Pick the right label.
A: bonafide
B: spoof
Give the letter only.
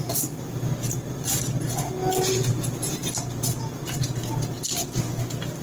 A